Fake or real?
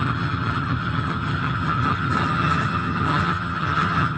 fake